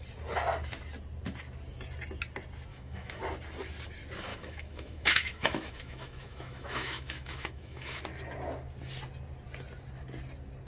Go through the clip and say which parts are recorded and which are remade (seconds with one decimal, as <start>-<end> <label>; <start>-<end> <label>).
0.0-2.7 recorded; 2.7-3.2 remade; 3.2-4.3 recorded; 4.3-8.0 remade; 8.0-10.7 recorded